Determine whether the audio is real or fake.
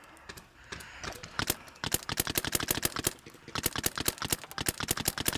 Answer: real